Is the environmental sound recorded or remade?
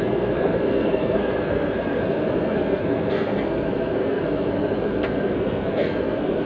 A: remade